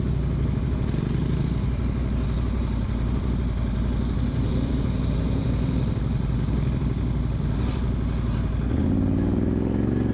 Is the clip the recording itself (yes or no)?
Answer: yes